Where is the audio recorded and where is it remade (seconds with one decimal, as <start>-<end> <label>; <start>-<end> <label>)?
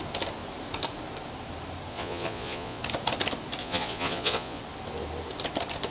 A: 0.0-1.9 recorded; 1.9-2.8 remade; 2.8-3.6 recorded; 3.6-4.6 remade; 4.6-5.9 recorded